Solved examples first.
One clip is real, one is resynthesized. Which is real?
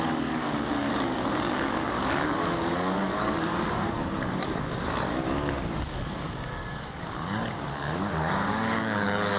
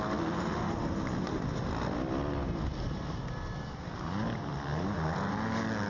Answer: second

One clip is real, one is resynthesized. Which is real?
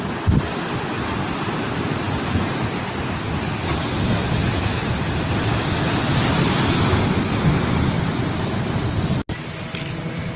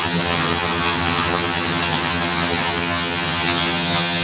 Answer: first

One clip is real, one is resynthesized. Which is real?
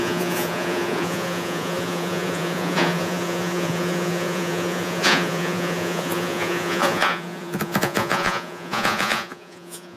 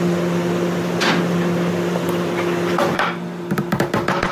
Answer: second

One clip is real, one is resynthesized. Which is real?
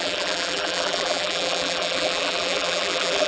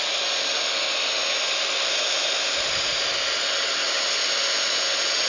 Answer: second